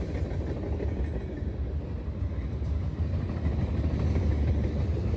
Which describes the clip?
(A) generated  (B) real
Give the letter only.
B